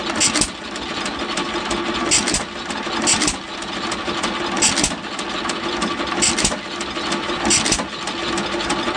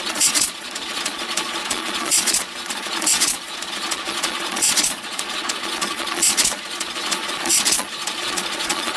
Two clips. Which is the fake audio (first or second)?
second